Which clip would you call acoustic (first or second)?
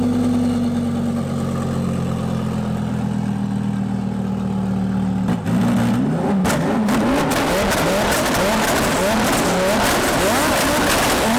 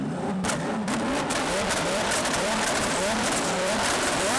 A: first